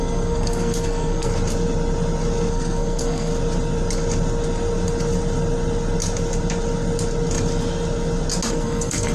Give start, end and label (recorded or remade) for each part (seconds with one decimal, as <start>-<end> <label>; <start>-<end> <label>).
0.0-1.3 remade; 1.3-2.5 recorded; 2.5-3.3 remade; 3.3-8.5 recorded; 8.5-9.1 remade